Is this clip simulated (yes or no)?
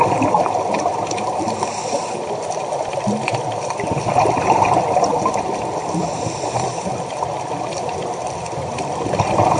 yes